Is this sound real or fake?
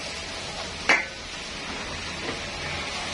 real